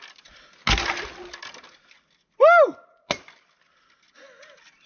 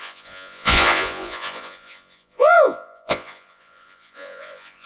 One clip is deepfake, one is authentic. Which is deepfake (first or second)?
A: second